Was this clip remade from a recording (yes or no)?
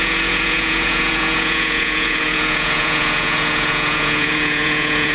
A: yes